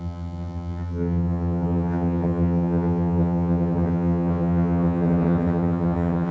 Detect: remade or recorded remade